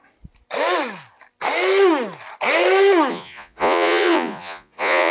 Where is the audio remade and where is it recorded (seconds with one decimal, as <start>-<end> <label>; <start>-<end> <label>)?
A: 0.0-3.1 recorded; 3.1-5.1 remade

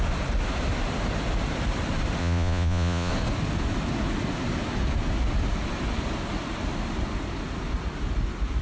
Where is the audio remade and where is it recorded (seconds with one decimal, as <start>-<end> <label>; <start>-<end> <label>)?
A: 0.0-2.2 recorded; 2.2-3.1 remade; 3.1-8.6 recorded

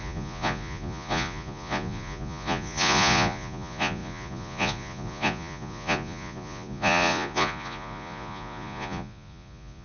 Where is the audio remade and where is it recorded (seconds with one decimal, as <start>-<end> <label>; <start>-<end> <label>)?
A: 0.0-9.8 remade

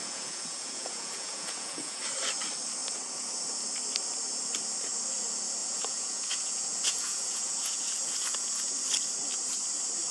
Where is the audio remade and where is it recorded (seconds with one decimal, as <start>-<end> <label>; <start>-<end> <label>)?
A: 0.0-2.0 remade; 2.0-5.6 recorded; 5.6-8.7 remade; 8.7-10.1 recorded

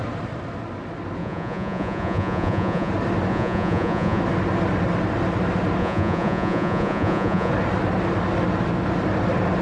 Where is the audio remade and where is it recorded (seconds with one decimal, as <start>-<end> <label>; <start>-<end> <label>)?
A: 0.0-1.2 recorded; 1.2-2.9 remade; 2.9-3.3 recorded; 3.3-4.2 remade; 4.2-5.8 recorded; 5.8-7.5 remade; 7.5-9.6 recorded

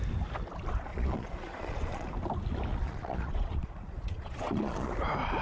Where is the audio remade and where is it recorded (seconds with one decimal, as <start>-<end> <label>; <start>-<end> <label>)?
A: 0.0-0.9 recorded; 0.9-2.1 remade; 2.1-2.7 recorded; 2.7-4.9 remade; 4.9-5.4 recorded

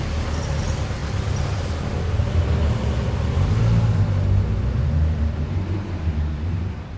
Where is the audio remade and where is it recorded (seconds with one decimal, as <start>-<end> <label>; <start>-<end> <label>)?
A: 0.0-7.0 recorded